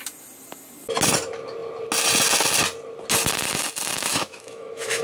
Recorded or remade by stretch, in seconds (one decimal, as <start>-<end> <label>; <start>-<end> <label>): 0.0-4.1 recorded; 4.1-5.0 remade